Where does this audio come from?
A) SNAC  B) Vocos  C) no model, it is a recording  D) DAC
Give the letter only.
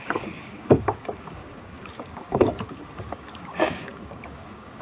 D